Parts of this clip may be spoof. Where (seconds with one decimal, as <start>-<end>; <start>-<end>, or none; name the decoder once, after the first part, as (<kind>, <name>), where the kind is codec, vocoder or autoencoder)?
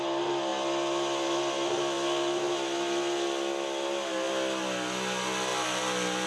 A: none